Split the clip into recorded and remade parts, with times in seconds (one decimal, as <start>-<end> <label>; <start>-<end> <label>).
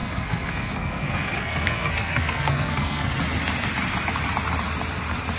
0.0-3.2 remade; 3.2-5.4 recorded